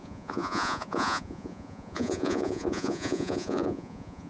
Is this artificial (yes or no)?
yes